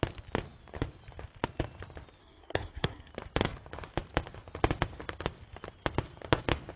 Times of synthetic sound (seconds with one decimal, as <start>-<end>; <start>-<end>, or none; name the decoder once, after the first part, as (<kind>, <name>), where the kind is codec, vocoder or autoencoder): 2.2-3.1 (codec, SNAC)